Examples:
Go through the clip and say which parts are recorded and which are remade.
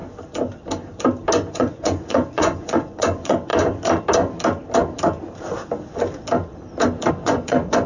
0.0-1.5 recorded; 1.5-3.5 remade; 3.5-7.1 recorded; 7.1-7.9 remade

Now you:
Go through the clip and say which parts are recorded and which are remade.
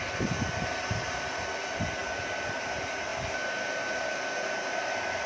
0.0-5.3 recorded